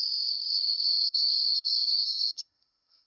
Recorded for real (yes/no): no